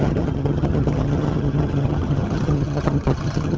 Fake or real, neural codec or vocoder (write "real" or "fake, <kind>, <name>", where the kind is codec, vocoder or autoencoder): fake, vocoder, HiFi-GAN